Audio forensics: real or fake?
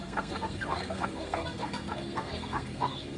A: fake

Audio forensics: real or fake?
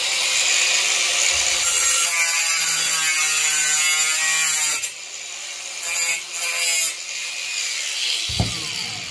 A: real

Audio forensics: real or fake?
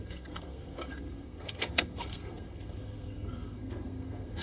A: fake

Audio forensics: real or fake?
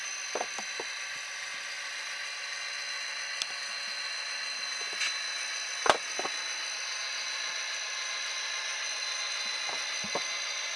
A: real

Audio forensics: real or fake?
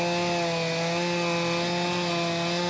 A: real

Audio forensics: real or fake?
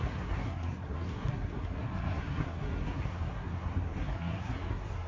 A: fake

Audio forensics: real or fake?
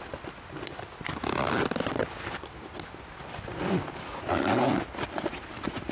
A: real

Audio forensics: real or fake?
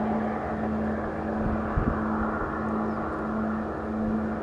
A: real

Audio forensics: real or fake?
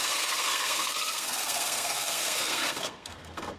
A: fake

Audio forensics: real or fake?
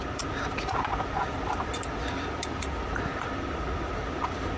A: real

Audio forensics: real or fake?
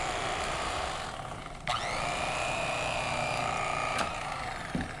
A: real